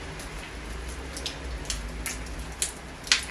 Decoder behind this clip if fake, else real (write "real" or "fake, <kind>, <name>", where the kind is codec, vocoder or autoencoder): real